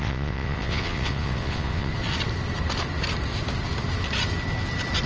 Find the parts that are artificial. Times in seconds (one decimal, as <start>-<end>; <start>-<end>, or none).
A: 0.0-1.9